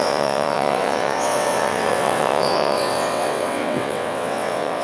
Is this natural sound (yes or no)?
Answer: no